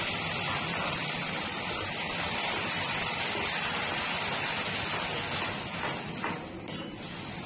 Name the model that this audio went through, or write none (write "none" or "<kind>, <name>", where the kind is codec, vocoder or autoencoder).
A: vocoder, BigVGAN v2